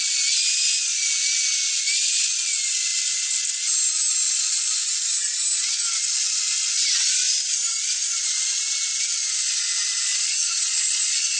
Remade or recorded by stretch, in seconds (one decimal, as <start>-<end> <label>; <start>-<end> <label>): 0.0-10.1 recorded; 10.1-11.4 remade